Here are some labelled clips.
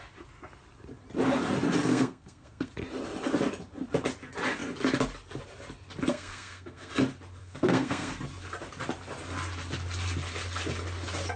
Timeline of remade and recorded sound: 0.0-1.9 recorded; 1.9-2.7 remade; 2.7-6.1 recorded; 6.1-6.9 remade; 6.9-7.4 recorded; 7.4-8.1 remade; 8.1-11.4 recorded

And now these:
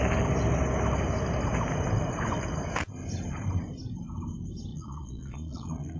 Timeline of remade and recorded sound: 0.0-4.7 recorded; 4.7-6.0 remade